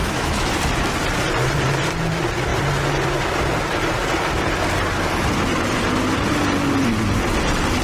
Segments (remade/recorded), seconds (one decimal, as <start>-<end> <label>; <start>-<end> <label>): 0.0-0.5 remade; 0.5-7.8 recorded